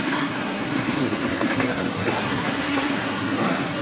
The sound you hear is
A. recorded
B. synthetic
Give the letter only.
B